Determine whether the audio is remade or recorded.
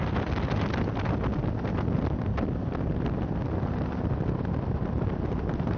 recorded